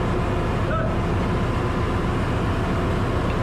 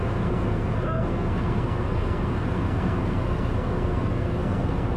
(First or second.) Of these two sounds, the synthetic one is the second